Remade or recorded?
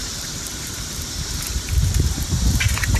remade